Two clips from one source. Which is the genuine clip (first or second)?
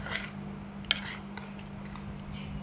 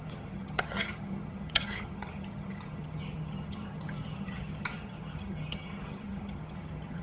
first